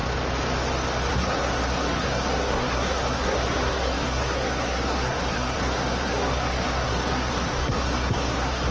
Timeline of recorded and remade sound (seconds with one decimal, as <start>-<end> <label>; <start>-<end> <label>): 0.0-1.1 recorded; 1.1-8.7 remade